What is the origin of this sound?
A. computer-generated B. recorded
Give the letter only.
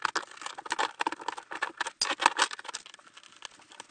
B